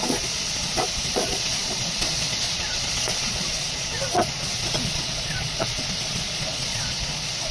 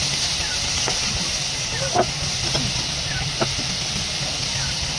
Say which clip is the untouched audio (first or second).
second